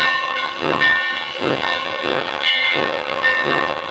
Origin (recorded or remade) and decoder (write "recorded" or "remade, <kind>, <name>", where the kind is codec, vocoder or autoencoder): remade, vocoder, HiFi-GAN